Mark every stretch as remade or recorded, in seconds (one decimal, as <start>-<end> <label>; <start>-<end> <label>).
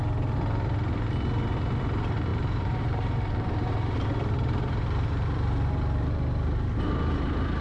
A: 0.0-2.3 recorded; 2.3-6.9 remade; 6.9-7.6 recorded